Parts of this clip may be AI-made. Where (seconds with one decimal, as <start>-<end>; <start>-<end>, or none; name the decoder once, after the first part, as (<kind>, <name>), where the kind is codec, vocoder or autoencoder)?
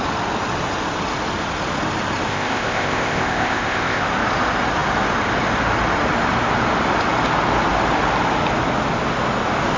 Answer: 2.3-4.0 (codec, ZipCodec)